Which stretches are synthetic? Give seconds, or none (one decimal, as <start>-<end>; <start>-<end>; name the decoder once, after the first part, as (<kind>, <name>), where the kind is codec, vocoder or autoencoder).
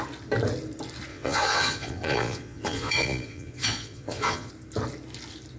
1.1-4.5 (vocoder, Vocos)